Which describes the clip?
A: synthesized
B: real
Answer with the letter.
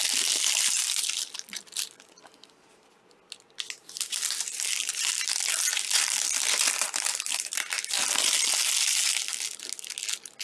B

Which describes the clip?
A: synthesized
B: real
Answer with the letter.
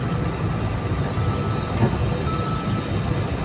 B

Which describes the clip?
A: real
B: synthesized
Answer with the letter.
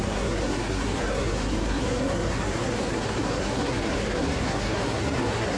B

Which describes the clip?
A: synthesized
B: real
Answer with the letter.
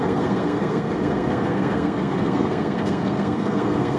A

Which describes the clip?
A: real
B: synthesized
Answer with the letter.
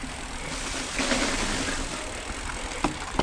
A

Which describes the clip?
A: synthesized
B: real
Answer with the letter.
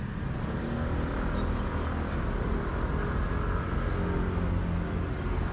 B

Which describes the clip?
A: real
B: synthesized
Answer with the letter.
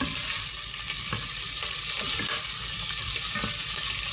A